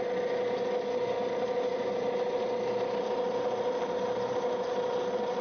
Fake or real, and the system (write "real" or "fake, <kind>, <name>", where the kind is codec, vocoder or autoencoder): real